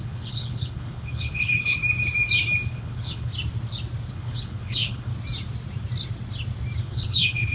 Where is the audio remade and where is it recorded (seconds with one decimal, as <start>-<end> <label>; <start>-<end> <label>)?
0.0-1.8 remade; 1.8-2.7 recorded; 2.7-3.3 remade; 3.3-4.1 recorded; 4.1-5.1 remade; 5.1-6.8 recorded; 6.8-7.5 remade